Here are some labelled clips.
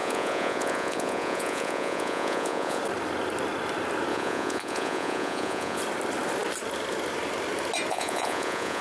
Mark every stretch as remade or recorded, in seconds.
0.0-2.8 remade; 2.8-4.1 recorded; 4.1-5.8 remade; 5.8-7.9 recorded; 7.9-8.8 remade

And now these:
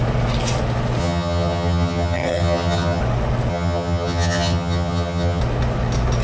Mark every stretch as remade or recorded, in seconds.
0.0-1.0 recorded; 1.0-3.0 remade; 3.0-3.5 recorded; 3.5-5.4 remade; 5.4-6.2 recorded

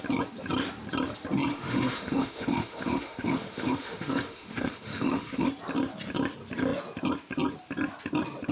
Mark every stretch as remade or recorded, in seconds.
0.0-1.5 recorded; 1.5-5.5 remade; 5.5-8.5 recorded

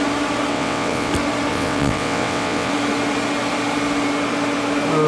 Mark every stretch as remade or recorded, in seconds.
0.0-0.5 recorded; 0.5-1.1 remade; 1.1-1.5 recorded; 1.5-2.7 remade; 2.7-5.1 recorded